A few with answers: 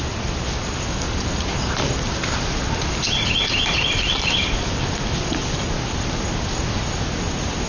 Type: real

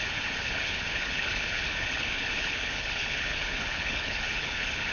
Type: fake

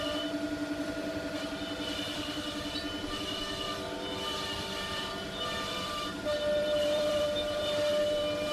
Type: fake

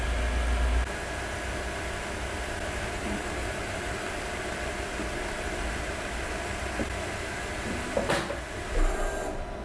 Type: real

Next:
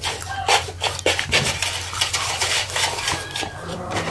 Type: fake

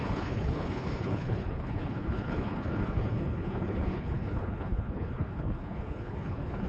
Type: fake